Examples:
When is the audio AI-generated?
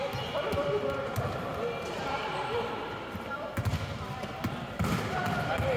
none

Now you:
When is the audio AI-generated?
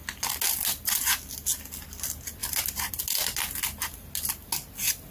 none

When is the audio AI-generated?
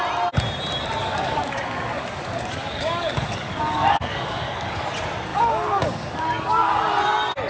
1.0-4.8; 5.3-6.7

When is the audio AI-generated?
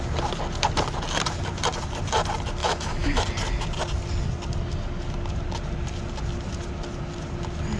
2.6-3.2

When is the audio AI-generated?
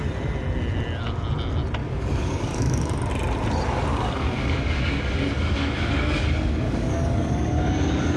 1.8-3.1; 3.9-8.2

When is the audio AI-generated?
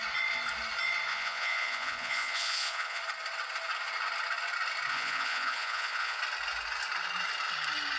1.1-3.0; 4.9-6.2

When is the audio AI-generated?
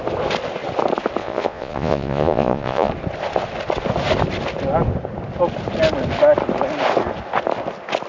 1.2-2.9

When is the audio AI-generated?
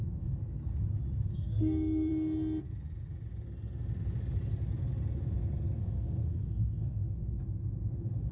0.0-0.7; 1.3-2.1; 5.8-7.4